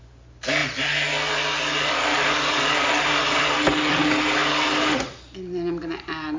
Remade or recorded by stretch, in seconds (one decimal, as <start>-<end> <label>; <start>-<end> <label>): 0.0-6.4 recorded